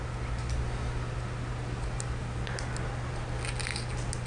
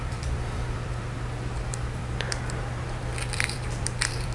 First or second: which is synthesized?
second